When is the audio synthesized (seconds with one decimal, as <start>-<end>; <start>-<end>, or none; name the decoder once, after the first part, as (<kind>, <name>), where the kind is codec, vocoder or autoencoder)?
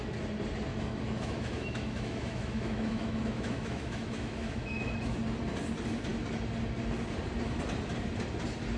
0.7-5.2 (autoencoder, DAC-VAE)